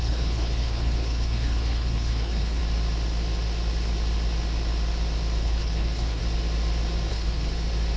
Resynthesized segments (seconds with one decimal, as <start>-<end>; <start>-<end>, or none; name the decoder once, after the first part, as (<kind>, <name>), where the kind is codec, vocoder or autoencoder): 0.0-2.6 (codec, HILCodec); 5.4-6.2; 7.1-7.5